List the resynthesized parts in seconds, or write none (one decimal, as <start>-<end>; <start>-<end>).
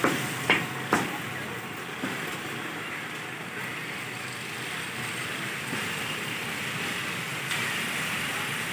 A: none